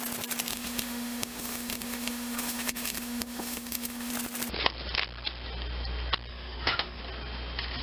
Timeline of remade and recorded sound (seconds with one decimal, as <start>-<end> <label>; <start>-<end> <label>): 0.0-0.5 recorded; 0.5-4.1 remade; 4.1-6.3 recorded; 6.3-7.0 remade; 7.0-7.8 recorded